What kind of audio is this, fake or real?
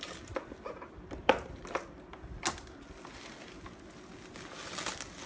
real